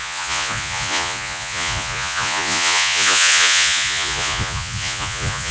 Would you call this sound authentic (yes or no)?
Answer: no